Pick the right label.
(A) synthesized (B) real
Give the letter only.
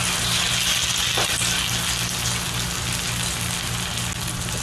B